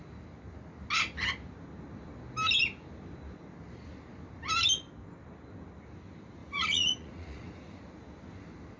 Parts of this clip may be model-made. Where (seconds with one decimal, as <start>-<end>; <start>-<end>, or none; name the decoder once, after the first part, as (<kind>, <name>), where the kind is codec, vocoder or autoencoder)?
6.4-7.8 (vocoder, Vocos)